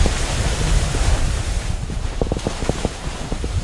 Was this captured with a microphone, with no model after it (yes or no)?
no